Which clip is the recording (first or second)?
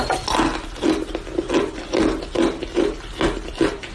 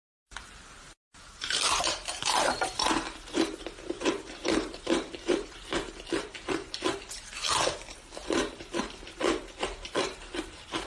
first